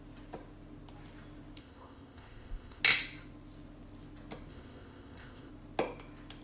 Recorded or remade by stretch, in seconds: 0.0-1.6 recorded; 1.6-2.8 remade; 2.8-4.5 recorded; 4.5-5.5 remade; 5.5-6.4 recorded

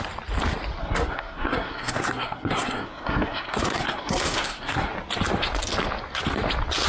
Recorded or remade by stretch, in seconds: 0.0-0.8 recorded; 0.8-4.9 remade; 4.9-6.9 recorded

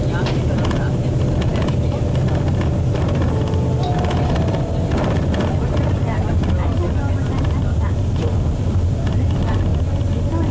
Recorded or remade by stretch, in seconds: 0.0-10.5 recorded

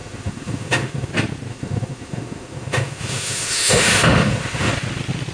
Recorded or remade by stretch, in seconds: 0.0-1.1 remade; 1.1-1.5 recorded; 1.5-4.7 remade; 4.7-5.3 recorded